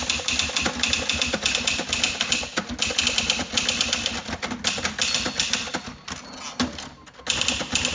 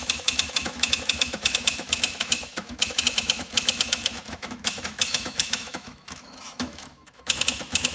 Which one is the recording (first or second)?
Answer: first